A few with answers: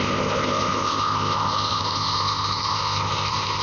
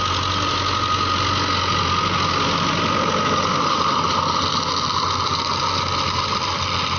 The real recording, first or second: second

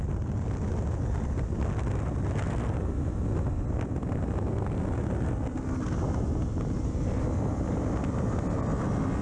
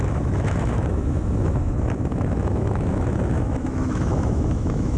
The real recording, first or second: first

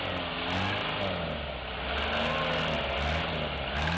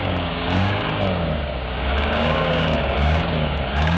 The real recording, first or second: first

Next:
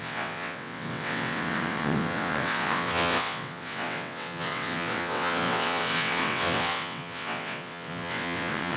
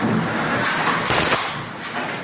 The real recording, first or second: second